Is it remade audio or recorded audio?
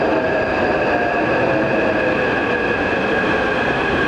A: recorded